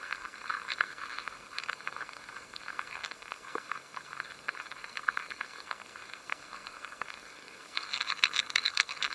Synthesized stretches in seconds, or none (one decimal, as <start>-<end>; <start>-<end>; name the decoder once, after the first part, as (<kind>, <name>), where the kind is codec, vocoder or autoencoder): 0.0-9.1 (codec, SNAC)